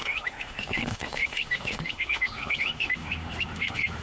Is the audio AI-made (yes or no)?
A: yes